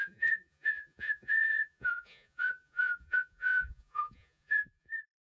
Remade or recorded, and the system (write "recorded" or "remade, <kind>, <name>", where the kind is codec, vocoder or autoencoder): remade, vocoder, Vocos